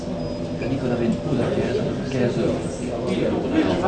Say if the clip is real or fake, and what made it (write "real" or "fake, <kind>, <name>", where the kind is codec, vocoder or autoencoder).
real